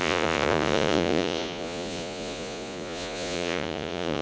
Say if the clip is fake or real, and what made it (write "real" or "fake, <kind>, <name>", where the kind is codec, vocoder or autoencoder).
fake, vocoder, Vocos